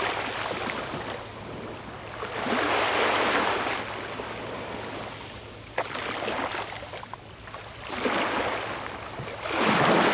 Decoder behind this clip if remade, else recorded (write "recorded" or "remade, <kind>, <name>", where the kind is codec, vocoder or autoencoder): recorded